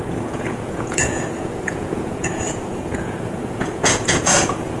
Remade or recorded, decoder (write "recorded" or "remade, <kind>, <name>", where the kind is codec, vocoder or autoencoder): remade, vocoder, Vocos